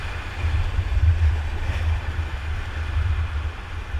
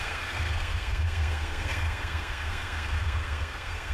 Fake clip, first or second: second